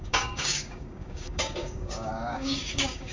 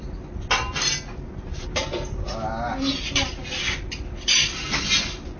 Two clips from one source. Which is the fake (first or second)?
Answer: first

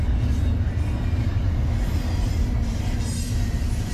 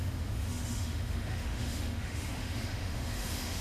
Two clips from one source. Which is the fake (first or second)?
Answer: second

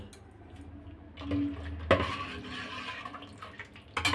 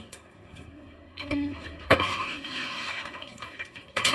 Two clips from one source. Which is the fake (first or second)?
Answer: second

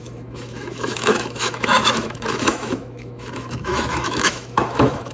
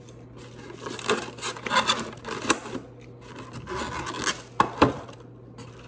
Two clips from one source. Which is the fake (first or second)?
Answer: first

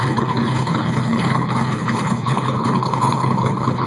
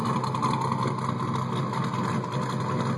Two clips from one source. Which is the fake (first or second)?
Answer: first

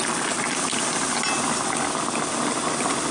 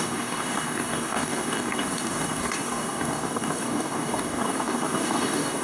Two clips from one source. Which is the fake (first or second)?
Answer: second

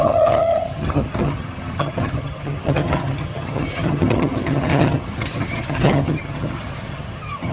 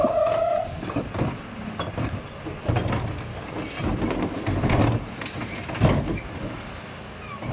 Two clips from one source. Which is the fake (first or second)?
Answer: first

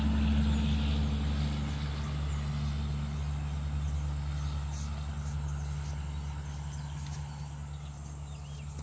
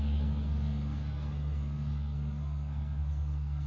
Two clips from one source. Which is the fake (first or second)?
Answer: second